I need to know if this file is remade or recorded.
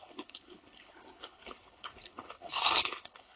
remade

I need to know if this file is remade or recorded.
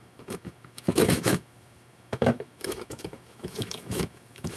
remade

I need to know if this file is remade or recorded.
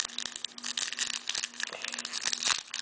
recorded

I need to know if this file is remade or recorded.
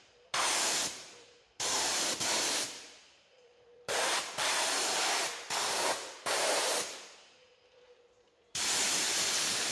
remade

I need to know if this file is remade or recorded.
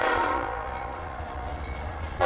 remade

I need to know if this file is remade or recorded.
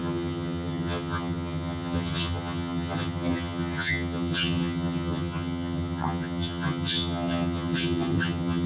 remade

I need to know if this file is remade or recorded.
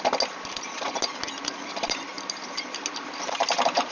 recorded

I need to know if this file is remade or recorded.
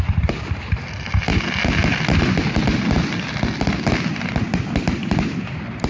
recorded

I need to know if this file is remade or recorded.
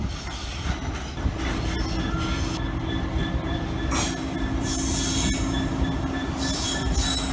recorded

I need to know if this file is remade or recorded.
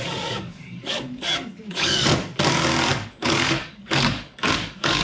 remade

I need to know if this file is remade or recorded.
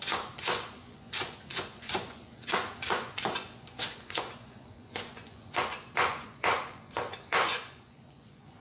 remade